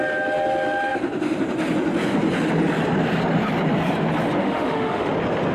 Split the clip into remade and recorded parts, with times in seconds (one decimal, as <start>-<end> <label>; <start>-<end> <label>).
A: 0.0-4.4 recorded; 4.4-5.1 remade; 5.1-5.5 recorded

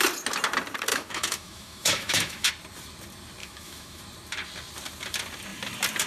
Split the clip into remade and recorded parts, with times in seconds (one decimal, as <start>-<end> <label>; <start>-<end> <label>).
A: 0.0-0.9 recorded; 0.9-2.5 remade; 2.5-3.4 recorded; 3.4-4.0 remade; 4.0-6.1 recorded

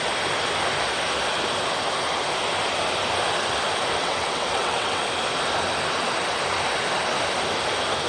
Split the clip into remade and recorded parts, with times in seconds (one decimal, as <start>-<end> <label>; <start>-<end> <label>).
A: 0.0-4.0 recorded; 4.0-5.0 remade; 5.0-8.1 recorded

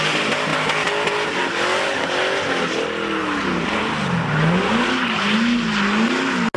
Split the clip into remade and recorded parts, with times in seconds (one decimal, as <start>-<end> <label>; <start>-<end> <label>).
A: 0.0-6.6 recorded

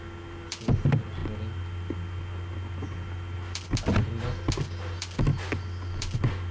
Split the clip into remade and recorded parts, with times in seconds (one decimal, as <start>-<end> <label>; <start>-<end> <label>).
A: 0.0-6.5 recorded

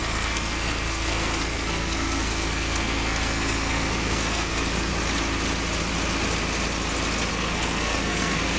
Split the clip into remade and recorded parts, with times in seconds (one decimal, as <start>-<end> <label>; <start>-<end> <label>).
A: 0.0-4.9 remade; 4.9-7.3 recorded; 7.3-8.6 remade

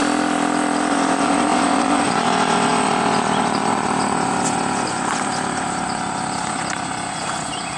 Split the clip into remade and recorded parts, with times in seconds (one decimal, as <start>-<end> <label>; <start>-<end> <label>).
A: 0.0-0.9 recorded; 0.9-7.8 remade

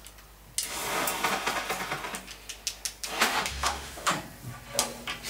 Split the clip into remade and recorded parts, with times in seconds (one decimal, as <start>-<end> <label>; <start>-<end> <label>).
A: 0.0-3.2 recorded; 3.2-4.1 remade; 4.1-5.3 recorded